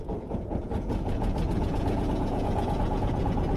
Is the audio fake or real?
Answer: fake